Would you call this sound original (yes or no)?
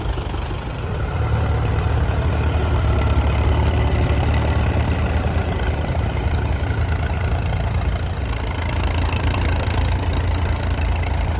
no